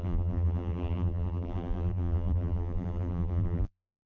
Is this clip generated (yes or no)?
yes